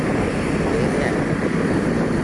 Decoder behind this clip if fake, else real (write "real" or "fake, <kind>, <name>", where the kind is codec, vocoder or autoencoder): real